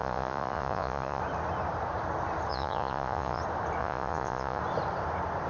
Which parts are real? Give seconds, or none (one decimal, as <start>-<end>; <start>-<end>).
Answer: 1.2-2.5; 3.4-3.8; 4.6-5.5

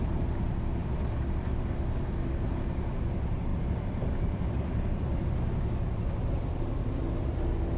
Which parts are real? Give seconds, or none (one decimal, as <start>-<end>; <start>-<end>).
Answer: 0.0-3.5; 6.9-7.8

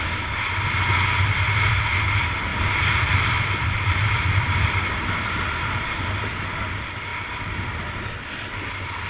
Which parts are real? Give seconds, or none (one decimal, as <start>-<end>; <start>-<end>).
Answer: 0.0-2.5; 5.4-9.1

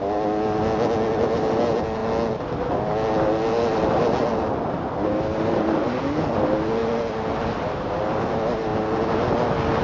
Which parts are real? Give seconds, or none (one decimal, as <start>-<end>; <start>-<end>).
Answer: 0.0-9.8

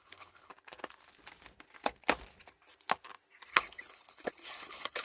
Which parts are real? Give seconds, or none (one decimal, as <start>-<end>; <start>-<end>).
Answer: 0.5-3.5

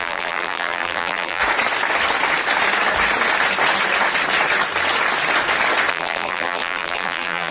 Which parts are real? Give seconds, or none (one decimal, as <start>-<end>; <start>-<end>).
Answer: 1.4-5.9